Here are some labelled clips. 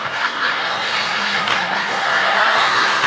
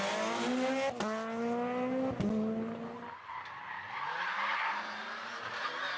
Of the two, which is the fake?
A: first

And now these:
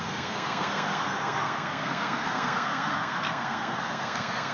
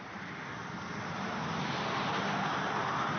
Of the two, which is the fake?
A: first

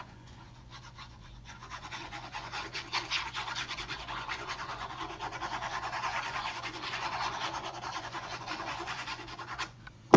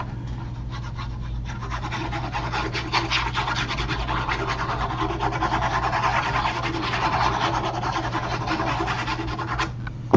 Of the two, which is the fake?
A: first